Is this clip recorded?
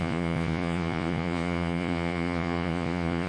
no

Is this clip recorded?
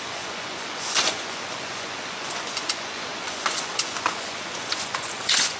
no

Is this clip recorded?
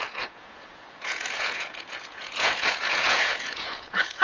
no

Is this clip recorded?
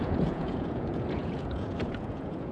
no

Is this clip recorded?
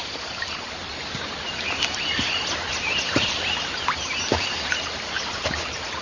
yes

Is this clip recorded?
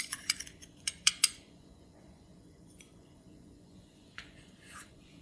no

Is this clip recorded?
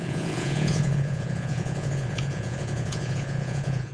no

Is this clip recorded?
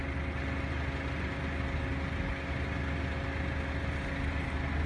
yes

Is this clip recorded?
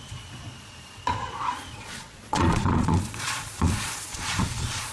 no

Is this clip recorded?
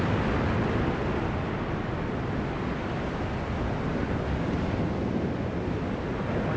yes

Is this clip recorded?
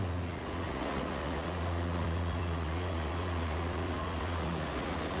no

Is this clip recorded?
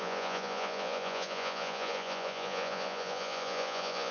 no